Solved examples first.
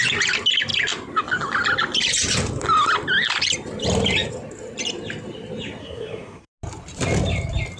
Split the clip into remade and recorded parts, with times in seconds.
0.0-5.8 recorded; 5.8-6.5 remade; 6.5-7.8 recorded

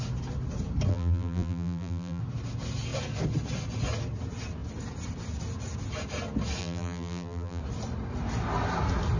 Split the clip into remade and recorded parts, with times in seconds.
0.0-0.9 recorded; 0.9-2.2 remade; 2.2-6.6 recorded; 6.6-7.6 remade; 7.6-9.2 recorded

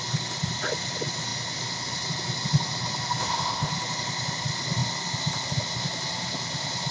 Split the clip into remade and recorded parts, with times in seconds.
0.0-3.2 recorded; 3.2-3.7 remade; 3.7-6.9 recorded

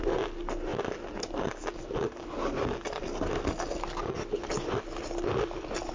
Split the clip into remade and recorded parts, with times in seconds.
0.0-5.9 recorded